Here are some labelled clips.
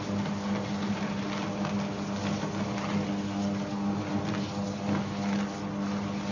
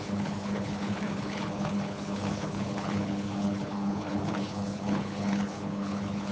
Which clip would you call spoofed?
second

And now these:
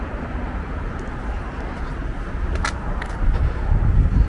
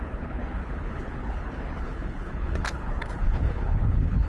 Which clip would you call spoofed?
second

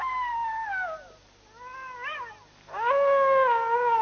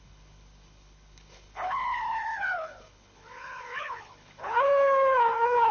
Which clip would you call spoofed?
second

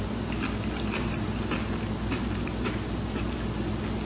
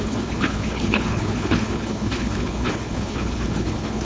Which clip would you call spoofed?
second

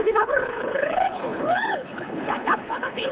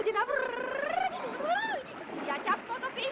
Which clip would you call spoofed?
first